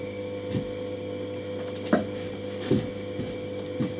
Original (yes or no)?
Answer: yes